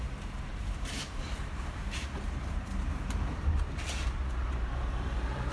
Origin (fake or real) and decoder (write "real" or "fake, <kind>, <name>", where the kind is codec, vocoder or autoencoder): fake, vocoder, BigVGAN v2